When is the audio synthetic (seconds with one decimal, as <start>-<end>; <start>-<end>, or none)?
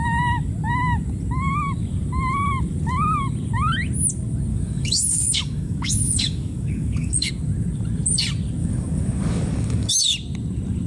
4.5-7.3; 8.6-9.9